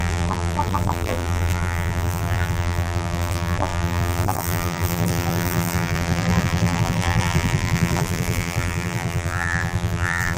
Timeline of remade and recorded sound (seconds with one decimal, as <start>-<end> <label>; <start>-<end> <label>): 0.0-10.4 remade